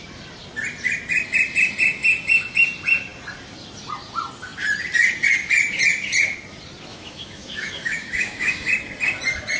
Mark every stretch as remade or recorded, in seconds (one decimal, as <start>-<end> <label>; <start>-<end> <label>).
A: 0.0-6.9 recorded; 6.9-8.7 remade; 8.7-9.6 recorded